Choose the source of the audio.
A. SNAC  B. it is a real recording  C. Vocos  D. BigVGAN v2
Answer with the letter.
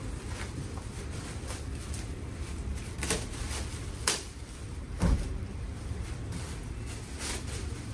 D